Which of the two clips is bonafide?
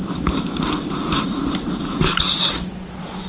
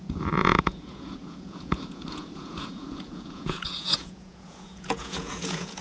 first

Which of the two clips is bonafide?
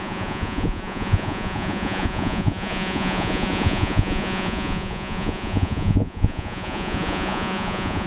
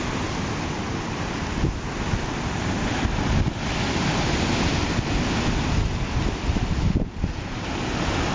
second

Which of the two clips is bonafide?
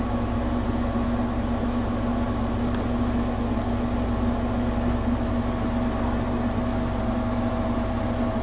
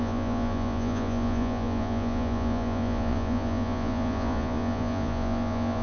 first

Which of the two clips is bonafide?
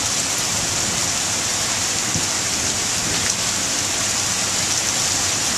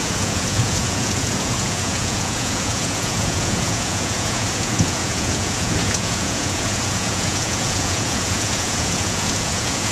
first